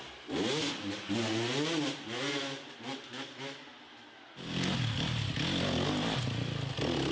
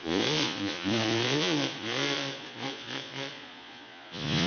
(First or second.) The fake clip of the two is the second